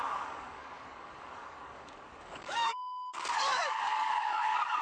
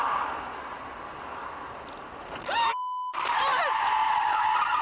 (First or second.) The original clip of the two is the second